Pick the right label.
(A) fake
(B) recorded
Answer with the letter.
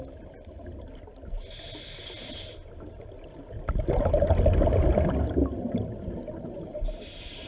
B